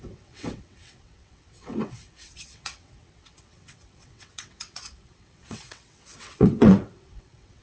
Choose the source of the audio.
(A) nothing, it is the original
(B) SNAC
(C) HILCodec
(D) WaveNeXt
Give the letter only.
D